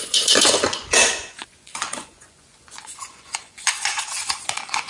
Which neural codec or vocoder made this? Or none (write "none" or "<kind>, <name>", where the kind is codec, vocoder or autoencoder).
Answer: vocoder, Vocos